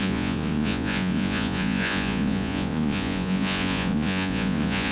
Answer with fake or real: fake